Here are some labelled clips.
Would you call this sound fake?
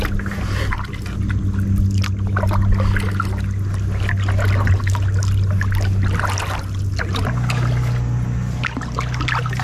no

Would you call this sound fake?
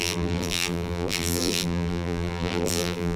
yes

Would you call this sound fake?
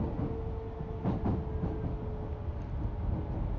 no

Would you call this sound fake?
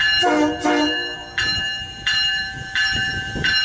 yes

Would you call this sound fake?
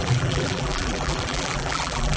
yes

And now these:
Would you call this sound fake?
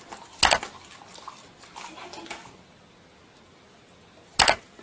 no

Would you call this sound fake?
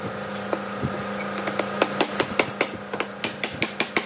no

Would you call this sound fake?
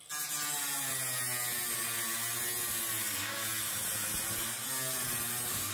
no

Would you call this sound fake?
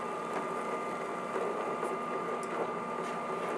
no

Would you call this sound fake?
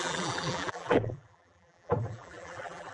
yes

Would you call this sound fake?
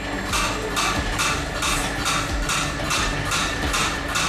no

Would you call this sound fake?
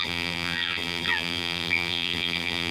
yes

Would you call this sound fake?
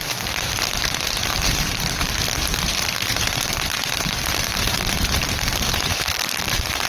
yes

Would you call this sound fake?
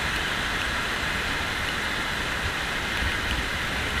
no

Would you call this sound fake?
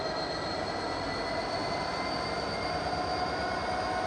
no